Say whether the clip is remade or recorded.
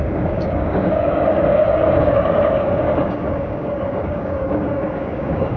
remade